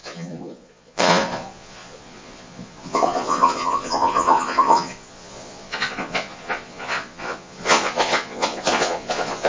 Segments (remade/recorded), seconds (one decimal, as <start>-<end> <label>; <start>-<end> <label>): 0.0-9.5 remade